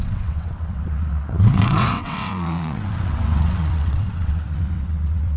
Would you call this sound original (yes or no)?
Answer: no